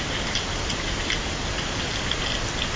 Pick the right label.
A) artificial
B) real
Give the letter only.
B